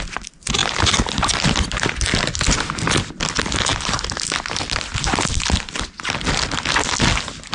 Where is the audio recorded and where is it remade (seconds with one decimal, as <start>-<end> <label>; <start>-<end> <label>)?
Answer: 0.0-7.5 recorded